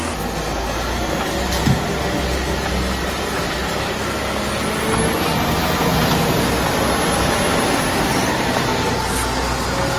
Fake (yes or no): no